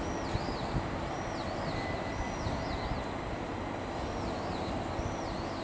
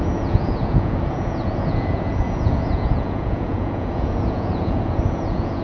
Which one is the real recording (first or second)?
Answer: first